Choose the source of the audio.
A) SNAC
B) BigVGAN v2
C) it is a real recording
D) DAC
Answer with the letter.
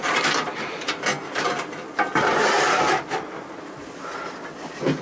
C